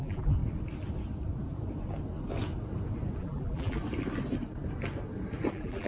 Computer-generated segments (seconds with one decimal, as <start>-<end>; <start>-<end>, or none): 0.0-0.4; 3.2-3.8; 5.5-5.9